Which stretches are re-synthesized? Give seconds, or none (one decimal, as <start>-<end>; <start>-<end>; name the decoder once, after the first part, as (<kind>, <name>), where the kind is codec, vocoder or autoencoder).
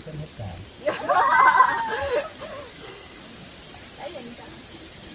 2.7-3.2 (codec, SNAC)